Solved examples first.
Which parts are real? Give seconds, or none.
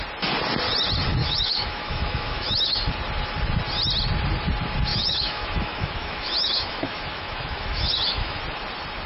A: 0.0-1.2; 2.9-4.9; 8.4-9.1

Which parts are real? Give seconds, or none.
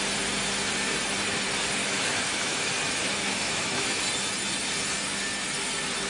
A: 0.0-1.8; 2.7-3.2; 4.0-6.1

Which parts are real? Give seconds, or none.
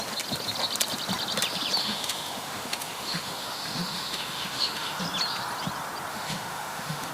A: 0.0-1.8; 5.0-6.1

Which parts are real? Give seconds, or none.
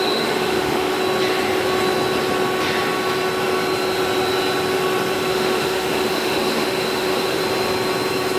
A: 1.0-5.3; 7.4-8.4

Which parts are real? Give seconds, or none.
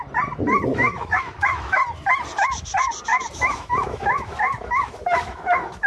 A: 0.0-0.7; 1.8-3.1